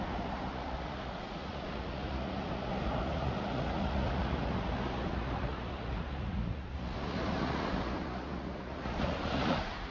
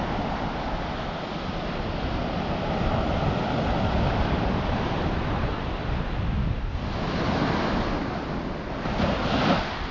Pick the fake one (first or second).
first